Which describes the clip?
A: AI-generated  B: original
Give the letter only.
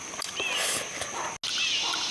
B